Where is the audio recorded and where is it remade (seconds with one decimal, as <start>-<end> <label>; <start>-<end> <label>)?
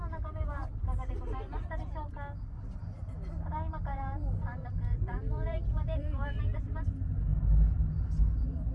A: 0.0-3.9 recorded; 3.9-6.4 remade; 6.4-8.7 recorded